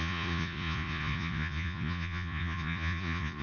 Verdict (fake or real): fake